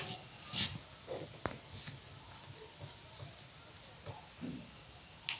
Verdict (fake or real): real